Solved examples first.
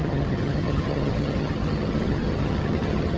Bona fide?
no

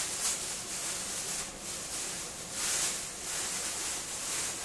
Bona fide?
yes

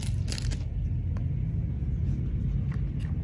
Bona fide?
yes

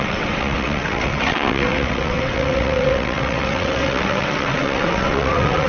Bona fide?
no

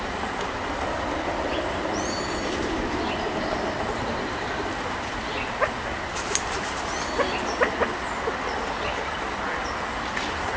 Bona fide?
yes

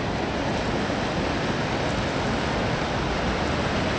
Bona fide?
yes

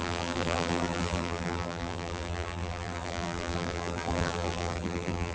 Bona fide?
no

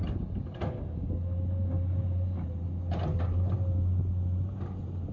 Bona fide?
yes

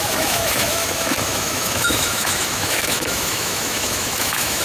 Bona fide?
no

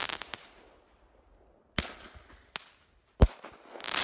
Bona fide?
yes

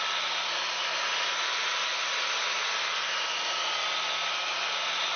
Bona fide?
no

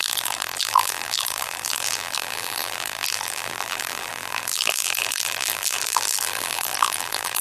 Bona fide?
no